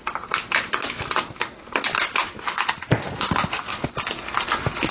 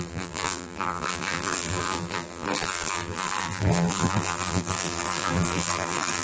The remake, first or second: second